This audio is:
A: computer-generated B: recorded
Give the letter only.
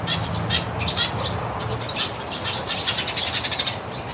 B